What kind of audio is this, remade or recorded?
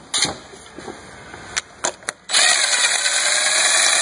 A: recorded